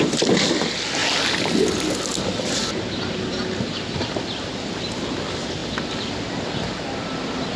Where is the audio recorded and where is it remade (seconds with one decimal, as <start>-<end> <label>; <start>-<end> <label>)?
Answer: 0.0-7.6 recorded